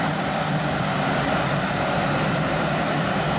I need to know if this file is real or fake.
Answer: fake